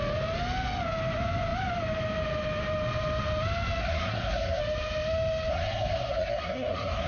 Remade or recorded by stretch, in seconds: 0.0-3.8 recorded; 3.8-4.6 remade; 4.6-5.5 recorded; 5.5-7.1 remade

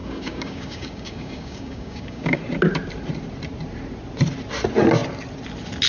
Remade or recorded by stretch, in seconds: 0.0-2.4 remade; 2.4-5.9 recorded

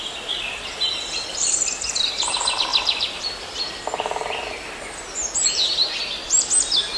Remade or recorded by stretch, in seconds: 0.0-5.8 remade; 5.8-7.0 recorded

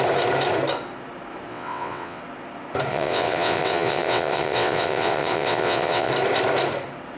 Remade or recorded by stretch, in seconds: 0.0-1.5 recorded; 1.5-2.2 remade; 2.2-2.9 recorded; 2.9-6.1 remade; 6.1-7.2 recorded

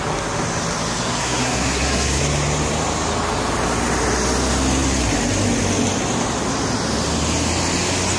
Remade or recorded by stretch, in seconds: 0.0-1.2 recorded; 1.2-2.2 remade; 2.2-8.2 recorded

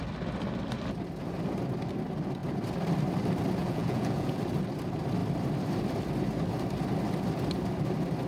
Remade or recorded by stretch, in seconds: 0.0-3.6 recorded; 3.6-4.4 remade; 4.4-8.3 recorded

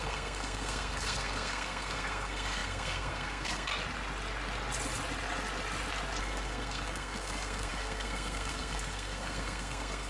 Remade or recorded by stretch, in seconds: 0.0-3.7 remade; 3.7-6.2 recorded; 6.2-10.1 remade